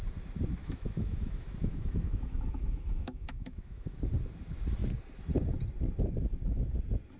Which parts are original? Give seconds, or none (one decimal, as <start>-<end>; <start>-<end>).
0.0-0.6; 4.0-7.2